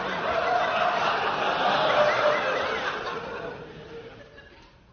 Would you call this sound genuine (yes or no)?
yes